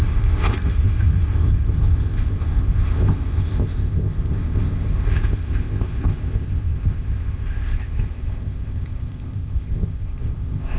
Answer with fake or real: fake